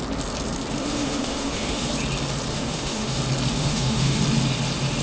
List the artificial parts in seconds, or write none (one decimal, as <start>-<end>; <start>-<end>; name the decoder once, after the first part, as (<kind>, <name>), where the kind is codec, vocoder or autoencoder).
0.8-1.9 (autoencoder, DAC-VAE); 2.5-3.2; 3.6-4.2